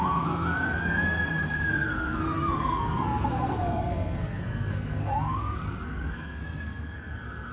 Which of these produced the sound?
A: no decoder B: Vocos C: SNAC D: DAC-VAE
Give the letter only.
C